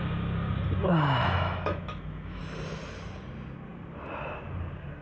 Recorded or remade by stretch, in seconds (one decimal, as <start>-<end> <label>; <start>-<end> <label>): 0.0-1.2 recorded; 1.2-2.4 remade; 2.4-5.0 recorded